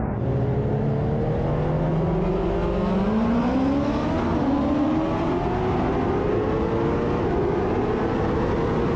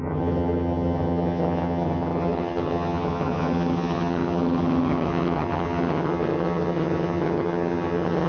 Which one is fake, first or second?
second